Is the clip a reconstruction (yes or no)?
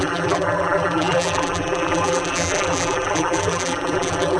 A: yes